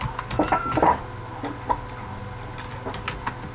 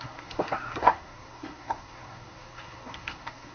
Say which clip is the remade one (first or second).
second